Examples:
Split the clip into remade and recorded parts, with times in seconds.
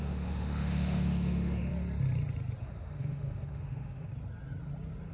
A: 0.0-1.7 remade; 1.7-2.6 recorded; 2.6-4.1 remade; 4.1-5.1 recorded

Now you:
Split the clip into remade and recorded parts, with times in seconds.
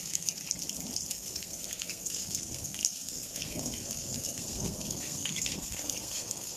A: 0.0-0.4 remade; 0.4-1.1 recorded; 1.1-6.6 remade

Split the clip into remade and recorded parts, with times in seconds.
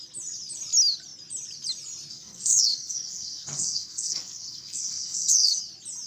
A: 0.0-2.1 recorded; 2.1-5.6 remade; 5.6-6.1 recorded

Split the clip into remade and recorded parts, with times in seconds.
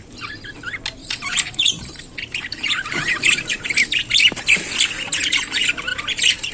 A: 0.0-1.0 recorded; 1.0-4.1 remade; 4.1-5.9 recorded; 5.9-6.5 remade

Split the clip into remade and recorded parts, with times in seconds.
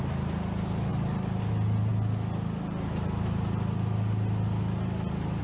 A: 0.0-5.4 recorded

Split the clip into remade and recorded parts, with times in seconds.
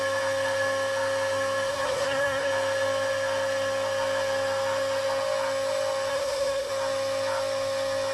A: 0.0-1.7 recorded; 1.7-2.5 remade; 2.5-6.1 recorded; 6.1-6.7 remade; 6.7-8.1 recorded